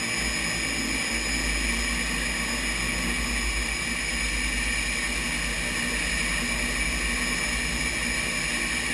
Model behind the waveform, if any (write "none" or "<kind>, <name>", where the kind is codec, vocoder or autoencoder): none